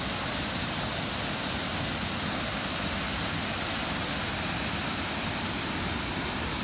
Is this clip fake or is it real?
real